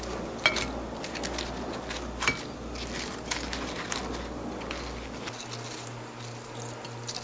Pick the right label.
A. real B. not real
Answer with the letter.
A